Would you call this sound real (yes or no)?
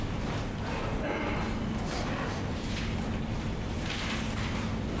yes